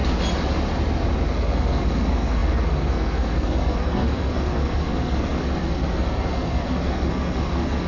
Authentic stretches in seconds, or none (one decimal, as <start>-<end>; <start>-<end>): 0.0-1.3